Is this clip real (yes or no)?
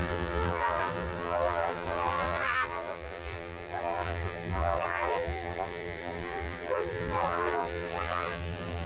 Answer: no